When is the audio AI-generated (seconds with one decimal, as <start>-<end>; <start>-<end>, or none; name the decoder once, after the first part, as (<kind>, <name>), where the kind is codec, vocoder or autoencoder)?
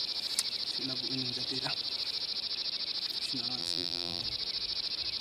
3.6-4.2 (vocoder, BigVGAN v2)